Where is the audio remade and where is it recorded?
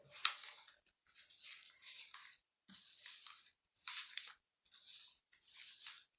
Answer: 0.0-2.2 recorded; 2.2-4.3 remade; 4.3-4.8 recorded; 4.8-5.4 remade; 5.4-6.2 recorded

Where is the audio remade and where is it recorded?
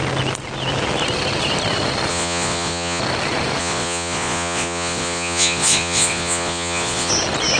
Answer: 0.0-2.1 recorded; 2.1-3.0 remade; 3.0-3.6 recorded; 3.6-7.1 remade; 7.1-7.6 recorded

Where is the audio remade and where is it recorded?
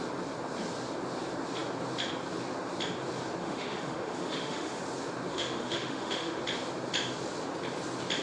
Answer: 0.0-3.4 recorded; 3.4-4.8 remade; 4.8-5.3 recorded; 5.3-6.4 remade; 6.4-8.2 recorded